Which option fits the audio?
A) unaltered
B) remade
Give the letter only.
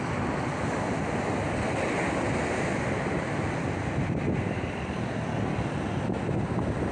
A